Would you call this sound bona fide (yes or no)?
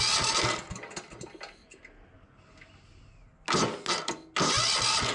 yes